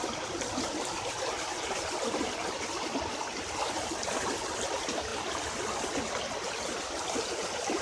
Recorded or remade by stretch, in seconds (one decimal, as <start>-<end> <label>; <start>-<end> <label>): 0.0-7.8 recorded